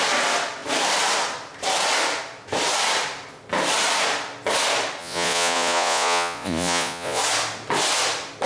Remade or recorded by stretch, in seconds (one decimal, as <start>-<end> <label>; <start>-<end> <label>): 0.0-5.0 recorded; 5.0-7.2 remade; 7.2-8.5 recorded